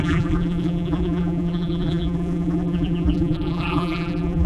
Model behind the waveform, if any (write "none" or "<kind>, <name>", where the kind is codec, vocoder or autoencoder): vocoder, BigVGAN v2